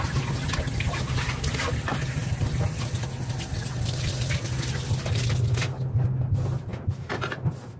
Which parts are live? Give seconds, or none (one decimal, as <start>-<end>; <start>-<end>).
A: 0.0-7.8